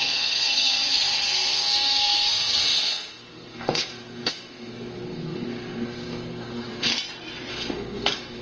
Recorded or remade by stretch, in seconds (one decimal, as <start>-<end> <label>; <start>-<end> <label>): 0.0-6.9 remade; 6.9-7.5 recorded; 7.5-8.4 remade